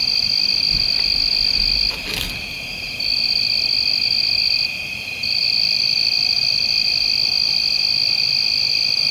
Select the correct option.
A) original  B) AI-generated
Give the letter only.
B